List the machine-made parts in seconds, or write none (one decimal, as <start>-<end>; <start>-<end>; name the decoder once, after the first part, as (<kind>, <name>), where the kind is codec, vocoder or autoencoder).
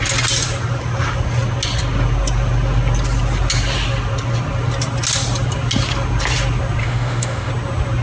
6.8-7.5 (autoencoder, DAC-VAE)